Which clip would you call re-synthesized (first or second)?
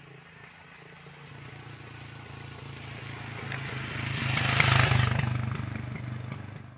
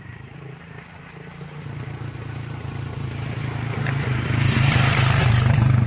second